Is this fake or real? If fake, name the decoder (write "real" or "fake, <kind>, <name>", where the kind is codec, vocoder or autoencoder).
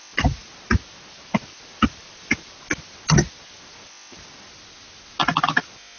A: real